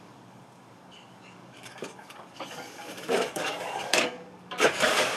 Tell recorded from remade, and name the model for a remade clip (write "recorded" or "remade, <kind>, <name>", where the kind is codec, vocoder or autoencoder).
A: remade, codec, DAC